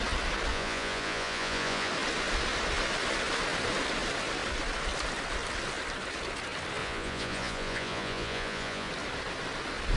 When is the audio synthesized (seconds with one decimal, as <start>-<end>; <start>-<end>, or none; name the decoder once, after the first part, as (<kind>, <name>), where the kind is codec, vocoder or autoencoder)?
0.5-1.9 (vocoder, Vocos); 6.8-8.9

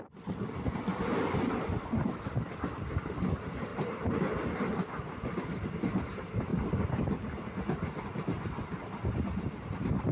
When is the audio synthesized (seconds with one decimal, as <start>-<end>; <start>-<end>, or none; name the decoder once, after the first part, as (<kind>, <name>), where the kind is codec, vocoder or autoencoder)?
none

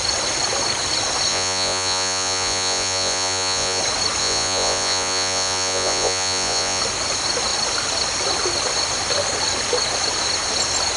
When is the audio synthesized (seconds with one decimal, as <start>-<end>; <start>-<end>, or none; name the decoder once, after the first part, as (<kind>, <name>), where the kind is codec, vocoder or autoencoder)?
1.3-3.8 (vocoder, Vocos); 4.2-6.8

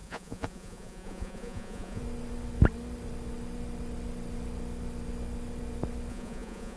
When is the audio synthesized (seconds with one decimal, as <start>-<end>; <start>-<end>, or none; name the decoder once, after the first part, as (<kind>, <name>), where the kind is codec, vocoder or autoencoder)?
0.0-2.0 (vocoder, Vocos); 6.1-6.8

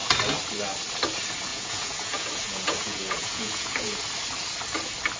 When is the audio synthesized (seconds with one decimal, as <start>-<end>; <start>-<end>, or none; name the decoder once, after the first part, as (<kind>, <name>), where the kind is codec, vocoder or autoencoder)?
1.5-4.0 (vocoder, Vocos)

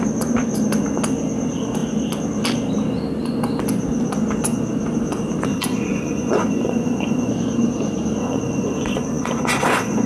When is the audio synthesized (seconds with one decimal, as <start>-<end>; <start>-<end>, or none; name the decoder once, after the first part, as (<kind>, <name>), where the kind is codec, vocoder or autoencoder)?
5.5-7.3 (vocoder, Vocos); 8.2-10.1

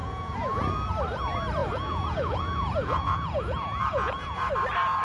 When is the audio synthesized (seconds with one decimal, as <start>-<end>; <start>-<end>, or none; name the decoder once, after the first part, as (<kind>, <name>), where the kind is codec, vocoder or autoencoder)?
0.0-0.7 (vocoder, Vocos); 1.6-4.5

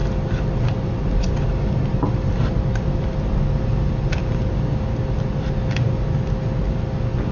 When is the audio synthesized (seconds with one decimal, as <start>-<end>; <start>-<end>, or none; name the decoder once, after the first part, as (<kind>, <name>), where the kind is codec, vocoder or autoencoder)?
none